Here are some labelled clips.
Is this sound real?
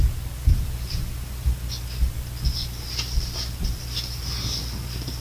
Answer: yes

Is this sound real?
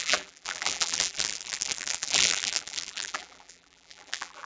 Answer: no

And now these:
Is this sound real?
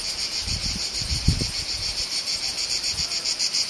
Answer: no